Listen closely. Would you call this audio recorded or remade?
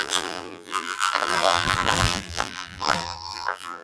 remade